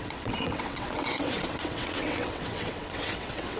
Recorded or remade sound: remade